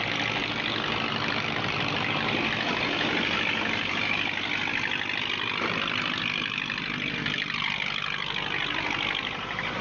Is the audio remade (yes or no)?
no